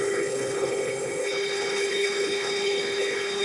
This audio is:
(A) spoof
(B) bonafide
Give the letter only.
A